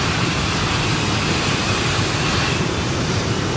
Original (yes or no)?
no